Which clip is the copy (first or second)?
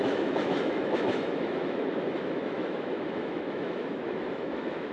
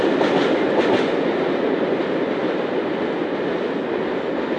first